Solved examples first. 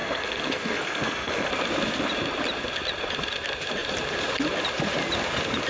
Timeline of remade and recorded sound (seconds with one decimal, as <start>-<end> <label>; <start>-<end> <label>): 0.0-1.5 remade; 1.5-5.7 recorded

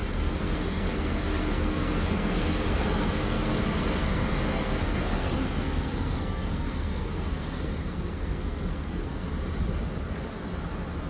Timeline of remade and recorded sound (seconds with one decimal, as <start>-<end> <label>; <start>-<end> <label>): 0.0-9.3 remade; 9.3-11.1 recorded

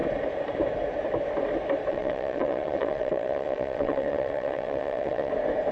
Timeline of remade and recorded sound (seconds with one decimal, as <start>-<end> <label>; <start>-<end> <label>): 0.0-1.9 recorded; 1.9-5.3 remade; 5.3-5.7 recorded

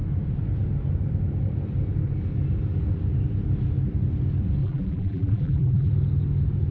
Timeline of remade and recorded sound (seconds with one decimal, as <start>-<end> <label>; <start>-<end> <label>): 0.0-4.6 recorded; 4.6-5.9 remade; 5.9-6.7 recorded